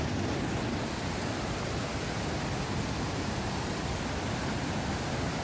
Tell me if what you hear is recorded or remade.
recorded